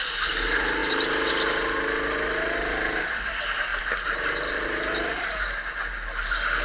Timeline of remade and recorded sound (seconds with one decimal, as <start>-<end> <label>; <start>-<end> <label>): 0.0-6.6 recorded